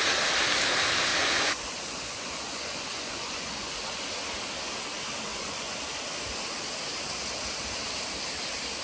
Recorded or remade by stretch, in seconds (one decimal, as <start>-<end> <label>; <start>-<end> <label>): 0.0-1.1 recorded; 1.1-4.0 remade; 4.0-5.3 recorded; 5.3-5.8 remade; 5.8-8.8 recorded